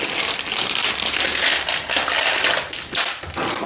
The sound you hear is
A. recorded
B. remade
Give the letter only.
A